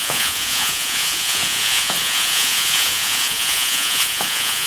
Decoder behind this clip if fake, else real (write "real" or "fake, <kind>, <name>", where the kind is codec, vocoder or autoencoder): fake, vocoder, Vocos